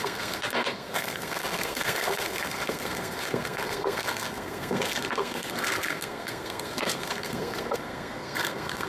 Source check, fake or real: fake